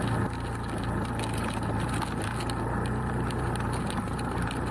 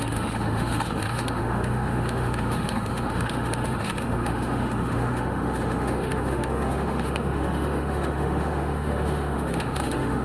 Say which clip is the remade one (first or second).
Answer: second